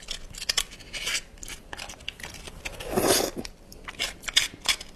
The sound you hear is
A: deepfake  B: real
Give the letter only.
B